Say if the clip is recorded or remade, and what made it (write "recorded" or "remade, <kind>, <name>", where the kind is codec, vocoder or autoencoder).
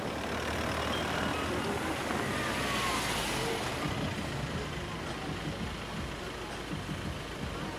recorded